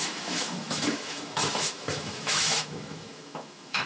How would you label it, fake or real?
fake